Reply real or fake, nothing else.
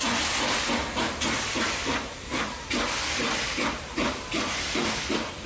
real